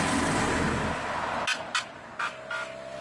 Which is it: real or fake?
real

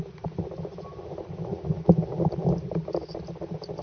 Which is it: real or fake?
real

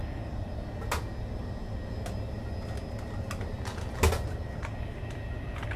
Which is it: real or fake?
real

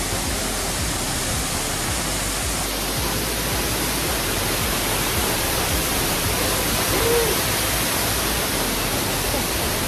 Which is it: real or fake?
real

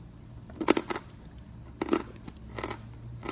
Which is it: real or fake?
real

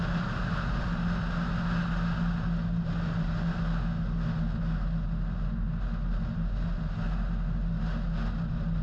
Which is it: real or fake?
real